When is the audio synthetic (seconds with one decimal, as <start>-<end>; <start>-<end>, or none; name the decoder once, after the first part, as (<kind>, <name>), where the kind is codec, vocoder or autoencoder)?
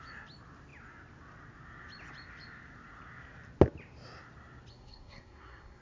4.7-5.8 (codec, SNAC)